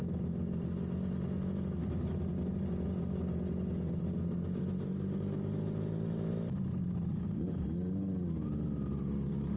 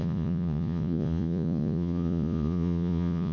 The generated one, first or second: second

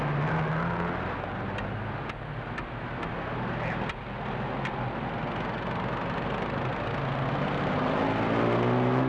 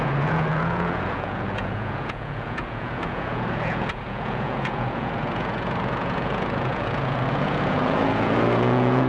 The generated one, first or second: second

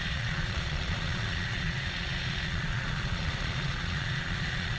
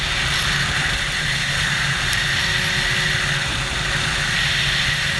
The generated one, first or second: first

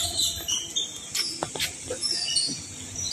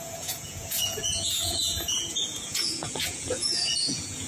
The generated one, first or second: second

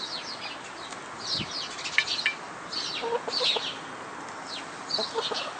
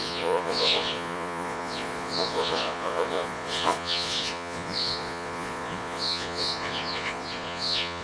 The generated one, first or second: second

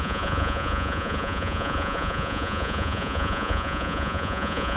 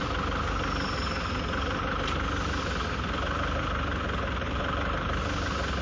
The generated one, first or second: first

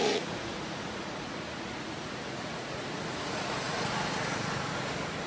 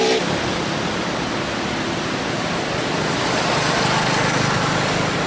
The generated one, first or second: first